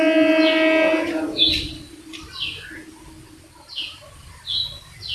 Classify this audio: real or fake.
real